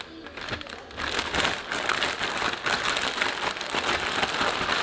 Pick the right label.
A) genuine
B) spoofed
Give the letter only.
A